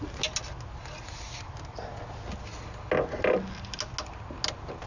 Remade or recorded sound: recorded